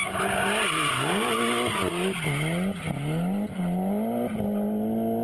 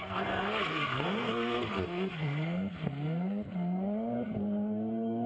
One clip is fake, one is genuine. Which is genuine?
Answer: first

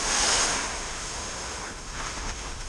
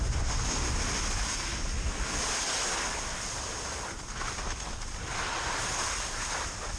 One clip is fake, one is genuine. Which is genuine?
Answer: second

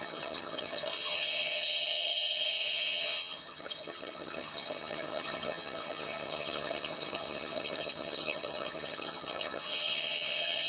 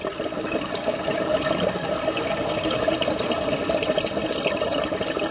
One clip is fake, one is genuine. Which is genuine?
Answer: second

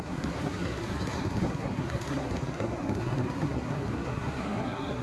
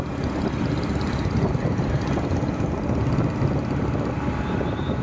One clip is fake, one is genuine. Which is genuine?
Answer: second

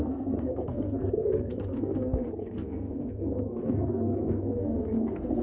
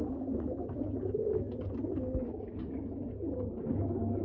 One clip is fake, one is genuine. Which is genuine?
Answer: second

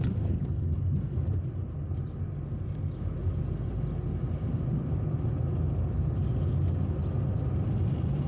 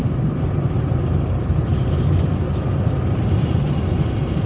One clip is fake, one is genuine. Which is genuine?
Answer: first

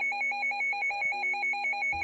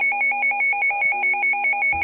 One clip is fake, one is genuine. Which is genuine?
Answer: second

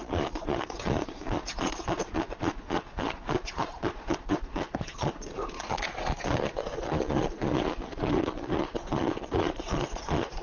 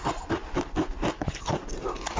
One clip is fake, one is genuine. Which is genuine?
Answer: second